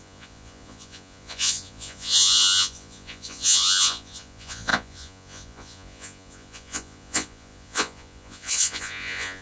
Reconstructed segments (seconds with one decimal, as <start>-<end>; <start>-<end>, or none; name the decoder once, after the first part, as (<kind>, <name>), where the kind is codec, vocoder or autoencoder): 0.0-9.4 (vocoder, Vocos)